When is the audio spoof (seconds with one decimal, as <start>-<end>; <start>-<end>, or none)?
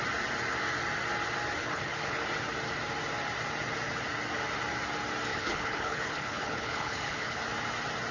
1.6-2.2; 5.3-7.4